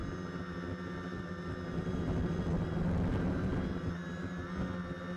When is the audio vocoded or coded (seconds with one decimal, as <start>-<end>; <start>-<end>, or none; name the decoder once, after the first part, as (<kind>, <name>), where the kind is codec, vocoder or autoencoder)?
none